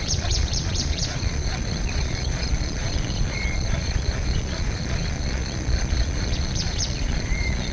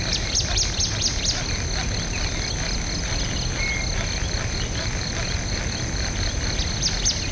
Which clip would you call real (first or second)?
second